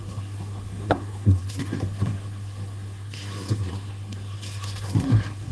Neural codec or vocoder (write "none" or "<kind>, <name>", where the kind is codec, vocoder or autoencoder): codec, SNAC